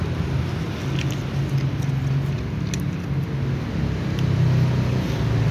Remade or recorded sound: recorded